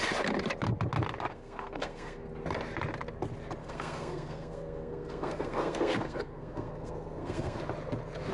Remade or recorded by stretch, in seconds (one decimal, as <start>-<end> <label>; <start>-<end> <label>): 0.0-1.3 recorded; 1.3-2.3 remade; 2.3-3.6 recorded; 3.6-7.6 remade; 7.6-8.3 recorded